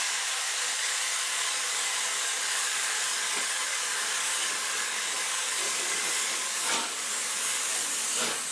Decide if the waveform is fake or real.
fake